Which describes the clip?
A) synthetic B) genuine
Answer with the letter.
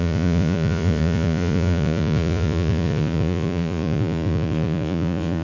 A